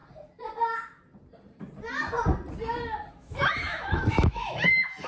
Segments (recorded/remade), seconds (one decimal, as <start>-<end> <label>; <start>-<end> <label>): 0.0-3.1 recorded; 3.1-5.1 remade